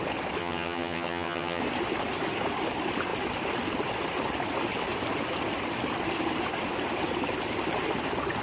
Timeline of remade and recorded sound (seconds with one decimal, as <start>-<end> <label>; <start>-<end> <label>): 0.0-0.4 recorded; 0.4-1.6 remade; 1.6-8.4 recorded